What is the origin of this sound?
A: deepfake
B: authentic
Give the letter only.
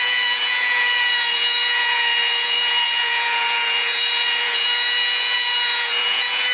A